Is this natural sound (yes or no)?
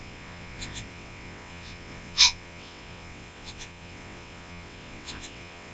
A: no